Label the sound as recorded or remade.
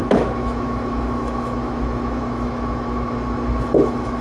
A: remade